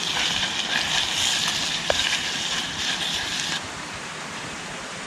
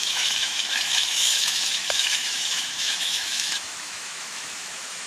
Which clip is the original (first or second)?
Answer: first